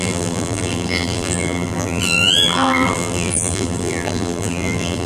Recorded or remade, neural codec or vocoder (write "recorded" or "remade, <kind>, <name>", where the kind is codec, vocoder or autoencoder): remade, vocoder, BigVGAN v2